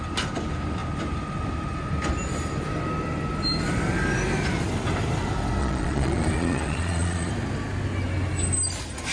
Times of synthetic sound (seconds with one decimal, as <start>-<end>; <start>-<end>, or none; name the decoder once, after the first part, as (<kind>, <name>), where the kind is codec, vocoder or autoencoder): 5.6-7.3 (vocoder, Vocos)

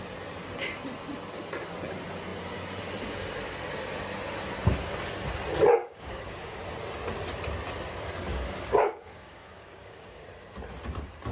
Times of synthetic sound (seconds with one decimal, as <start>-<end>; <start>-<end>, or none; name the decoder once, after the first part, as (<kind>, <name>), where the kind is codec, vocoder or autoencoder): 5.8-6.6 (codec, DAC); 8.3-10.2